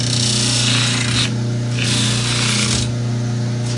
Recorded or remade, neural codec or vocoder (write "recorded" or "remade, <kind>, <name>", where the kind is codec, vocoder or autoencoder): recorded